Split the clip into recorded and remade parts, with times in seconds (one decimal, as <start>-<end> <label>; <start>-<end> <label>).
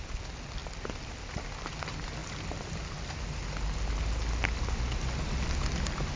0.0-6.2 recorded